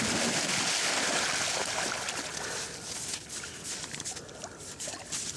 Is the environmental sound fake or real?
real